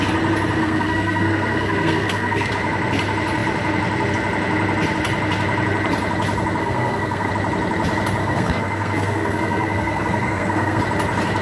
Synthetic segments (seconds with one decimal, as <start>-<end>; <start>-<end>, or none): 0.6-2.5; 6.6-7.3; 8.2-10.8